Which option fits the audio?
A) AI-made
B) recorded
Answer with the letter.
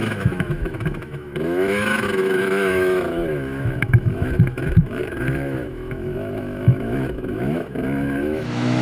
A